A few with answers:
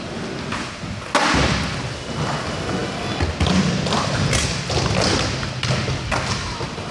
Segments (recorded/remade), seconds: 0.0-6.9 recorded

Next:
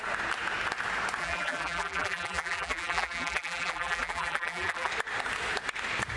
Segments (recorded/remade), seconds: 0.0-1.2 recorded; 1.2-4.9 remade; 4.9-6.2 recorded

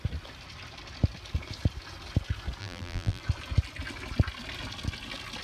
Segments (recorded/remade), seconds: 0.0-2.6 recorded; 2.6-3.2 remade; 3.2-5.4 recorded

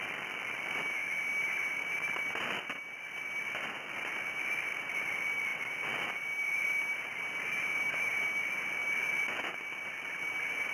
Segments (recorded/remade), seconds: 0.0-10.7 recorded

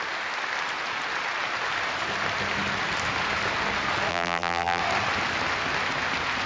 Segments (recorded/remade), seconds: 0.0-4.1 recorded; 4.1-4.8 remade; 4.8-6.5 recorded

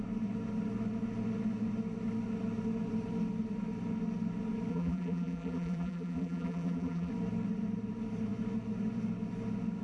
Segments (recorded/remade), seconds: 0.0-4.7 recorded; 4.7-7.1 remade; 7.1-9.8 recorded

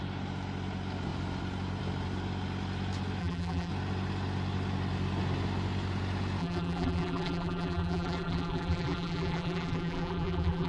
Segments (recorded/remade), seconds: 0.0-3.2 recorded; 3.2-3.7 remade; 3.7-6.4 recorded; 6.4-10.7 remade